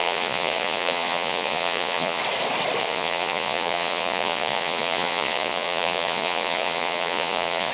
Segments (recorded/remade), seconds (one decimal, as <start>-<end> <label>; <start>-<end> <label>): 0.0-2.2 remade; 2.2-2.8 recorded; 2.8-7.7 remade